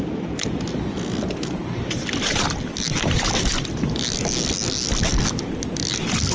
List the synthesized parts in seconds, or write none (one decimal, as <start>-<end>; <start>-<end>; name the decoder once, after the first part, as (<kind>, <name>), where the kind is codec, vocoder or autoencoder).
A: none